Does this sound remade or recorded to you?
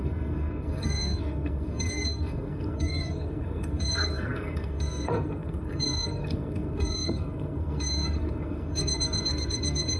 remade